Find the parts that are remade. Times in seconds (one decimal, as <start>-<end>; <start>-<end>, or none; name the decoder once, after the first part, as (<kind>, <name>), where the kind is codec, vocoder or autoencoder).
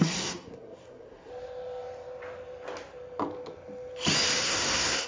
0.0-1.3 (codec, SNAC); 4.4-5.1